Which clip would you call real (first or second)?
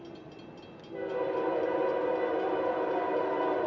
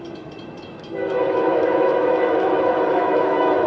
first